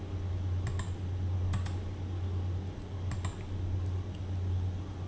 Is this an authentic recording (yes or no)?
yes